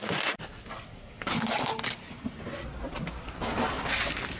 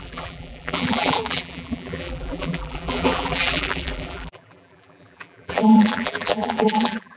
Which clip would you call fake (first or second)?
second